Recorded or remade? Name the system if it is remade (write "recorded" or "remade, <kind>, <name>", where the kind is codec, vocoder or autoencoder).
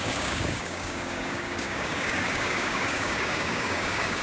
remade, codec, DAC